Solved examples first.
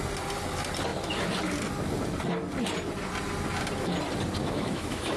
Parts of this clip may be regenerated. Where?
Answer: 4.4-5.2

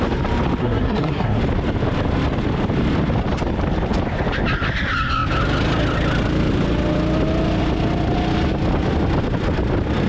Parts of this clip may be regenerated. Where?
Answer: 0.6-1.4

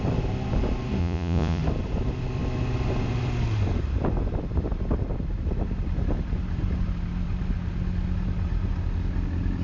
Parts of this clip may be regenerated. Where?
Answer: 1.0-1.6

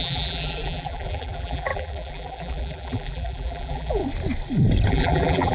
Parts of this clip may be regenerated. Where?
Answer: 0.0-4.0; 4.9-5.5

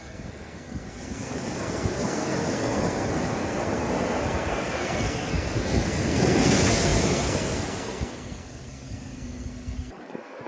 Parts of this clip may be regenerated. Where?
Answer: 0.0-10.5

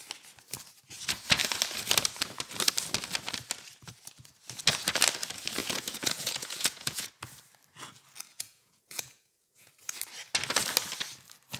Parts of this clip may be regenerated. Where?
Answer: 5.6-7.1; 8.3-9.7

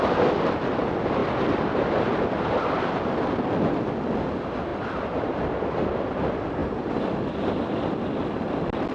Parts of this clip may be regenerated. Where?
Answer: 4.7-5.3; 6.6-8.5